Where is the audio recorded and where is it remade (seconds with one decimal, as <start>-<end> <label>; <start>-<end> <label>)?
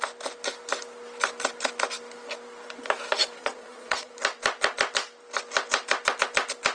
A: 0.0-3.4 recorded; 3.4-4.1 remade; 4.1-6.7 recorded